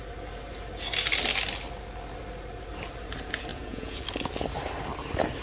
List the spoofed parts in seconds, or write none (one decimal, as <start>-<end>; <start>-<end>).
3.5-4.0

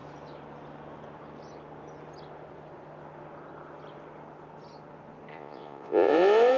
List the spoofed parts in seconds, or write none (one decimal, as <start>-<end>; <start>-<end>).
5.3-6.6

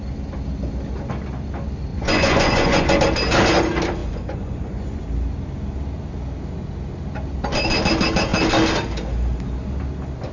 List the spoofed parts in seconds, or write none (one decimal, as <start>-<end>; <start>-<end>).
1.9-3.0; 4.0-5.0

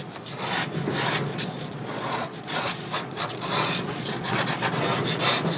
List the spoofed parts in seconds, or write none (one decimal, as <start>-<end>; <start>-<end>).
1.3-4.7

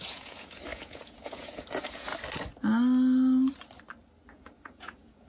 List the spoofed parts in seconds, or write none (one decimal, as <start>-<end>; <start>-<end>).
0.0-2.1; 4.3-5.3

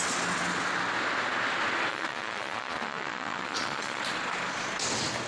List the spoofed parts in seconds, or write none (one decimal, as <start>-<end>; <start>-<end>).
1.9-4.0

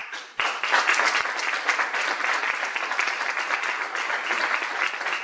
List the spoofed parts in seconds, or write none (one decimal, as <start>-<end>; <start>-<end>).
none

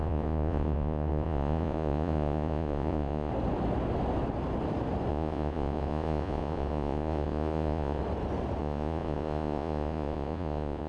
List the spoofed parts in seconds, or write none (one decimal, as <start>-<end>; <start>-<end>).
0.0-3.3; 5.1-8.0; 8.6-10.9